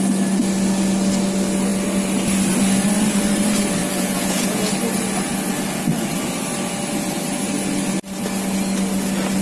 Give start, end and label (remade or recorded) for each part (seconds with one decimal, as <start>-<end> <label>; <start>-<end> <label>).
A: 0.0-3.8 recorded; 3.8-4.6 remade; 4.6-9.4 recorded